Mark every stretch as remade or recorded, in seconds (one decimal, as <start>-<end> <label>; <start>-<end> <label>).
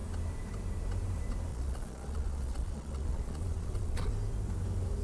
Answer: 0.0-1.5 recorded; 1.5-4.1 remade; 4.1-5.0 recorded